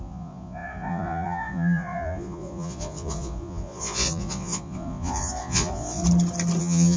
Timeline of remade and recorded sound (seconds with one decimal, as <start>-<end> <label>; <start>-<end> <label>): 0.0-6.0 remade; 6.0-6.6 recorded; 6.6-7.0 remade